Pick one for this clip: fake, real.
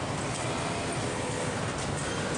real